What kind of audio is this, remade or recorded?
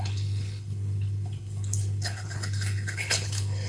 remade